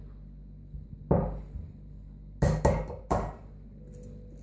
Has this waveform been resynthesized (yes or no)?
no